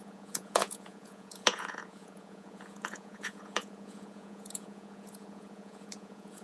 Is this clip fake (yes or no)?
yes